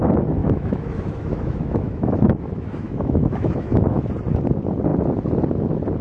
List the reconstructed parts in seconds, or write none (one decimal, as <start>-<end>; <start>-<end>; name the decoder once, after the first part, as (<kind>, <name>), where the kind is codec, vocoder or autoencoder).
0.4-4.0 (autoencoder, DAC-VAE)